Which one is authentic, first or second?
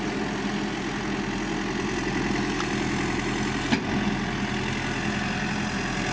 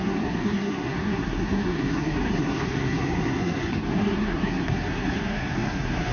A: first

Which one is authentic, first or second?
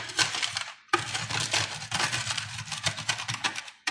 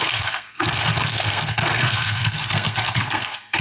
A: first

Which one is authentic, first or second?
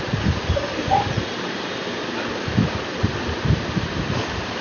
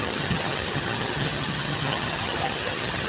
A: first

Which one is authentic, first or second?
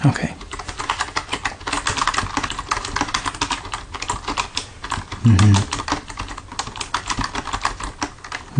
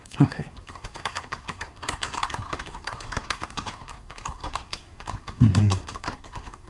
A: first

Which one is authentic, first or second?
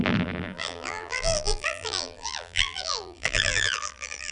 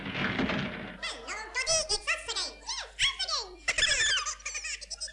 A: second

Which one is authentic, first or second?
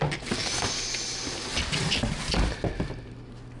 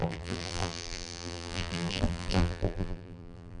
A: first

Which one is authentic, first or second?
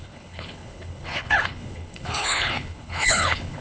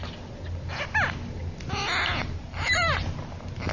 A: second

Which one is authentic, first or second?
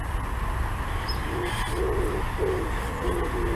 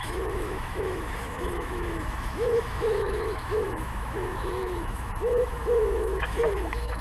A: first